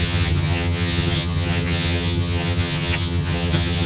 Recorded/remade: remade